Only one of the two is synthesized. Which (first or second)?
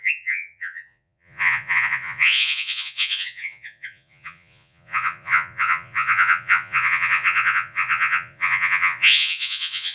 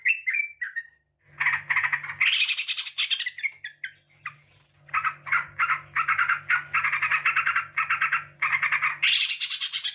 first